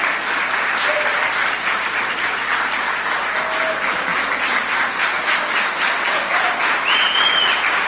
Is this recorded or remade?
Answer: recorded